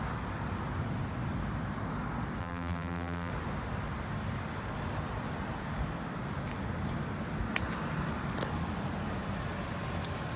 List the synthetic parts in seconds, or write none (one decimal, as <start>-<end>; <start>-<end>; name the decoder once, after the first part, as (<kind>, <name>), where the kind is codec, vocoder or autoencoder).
2.4-3.3 (vocoder, BigVGAN v2)